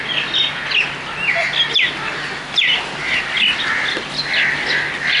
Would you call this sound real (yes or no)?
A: yes